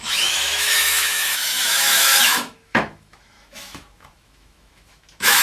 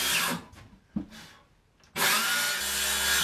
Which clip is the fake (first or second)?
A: first